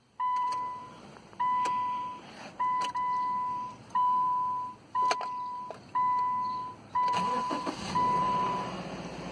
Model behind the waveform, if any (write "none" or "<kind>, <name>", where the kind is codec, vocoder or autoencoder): vocoder, BigVGAN v2